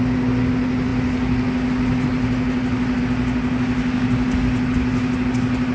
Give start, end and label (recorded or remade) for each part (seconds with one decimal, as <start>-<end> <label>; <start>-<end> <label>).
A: 0.0-5.7 recorded